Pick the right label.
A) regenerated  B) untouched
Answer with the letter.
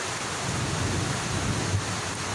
B